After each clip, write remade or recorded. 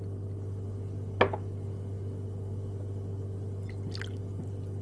recorded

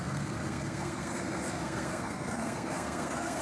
remade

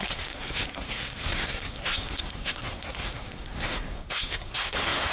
remade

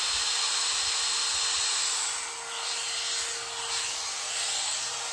recorded